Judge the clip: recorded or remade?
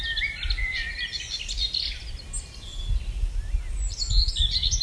recorded